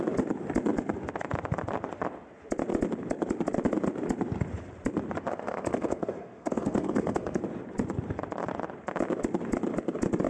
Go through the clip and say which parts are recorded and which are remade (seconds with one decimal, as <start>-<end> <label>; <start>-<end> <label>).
0.0-5.3 recorded; 5.3-7.4 remade; 7.4-10.3 recorded